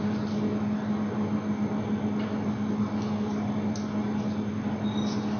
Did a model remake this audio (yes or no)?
no